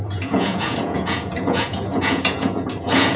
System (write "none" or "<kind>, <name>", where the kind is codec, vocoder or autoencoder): vocoder, Vocos